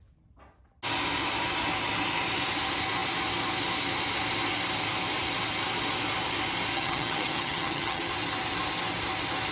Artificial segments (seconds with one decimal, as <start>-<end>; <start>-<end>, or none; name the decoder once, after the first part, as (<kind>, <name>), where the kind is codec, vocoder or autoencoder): 6.7-8.1 (vocoder, HiFi-GAN)